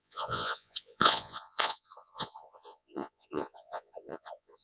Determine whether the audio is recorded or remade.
remade